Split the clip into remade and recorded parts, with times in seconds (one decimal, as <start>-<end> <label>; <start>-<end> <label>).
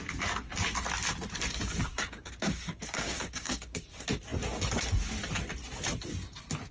0.0-1.9 recorded; 1.9-3.8 remade; 3.8-6.7 recorded